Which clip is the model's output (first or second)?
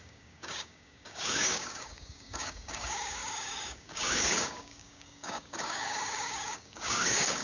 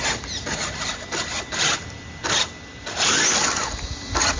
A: first